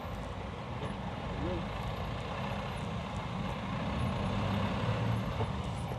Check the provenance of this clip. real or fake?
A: real